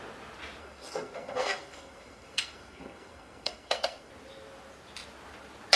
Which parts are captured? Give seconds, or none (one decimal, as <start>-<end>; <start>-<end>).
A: 0.0-0.6; 4.1-5.8